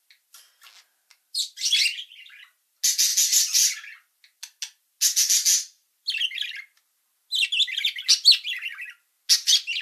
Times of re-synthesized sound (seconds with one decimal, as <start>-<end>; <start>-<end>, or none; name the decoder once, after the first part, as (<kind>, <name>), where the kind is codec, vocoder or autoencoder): none